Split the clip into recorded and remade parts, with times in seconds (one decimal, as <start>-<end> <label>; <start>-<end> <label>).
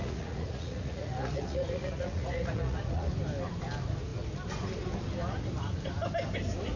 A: 0.0-3.1 remade; 3.1-6.8 recorded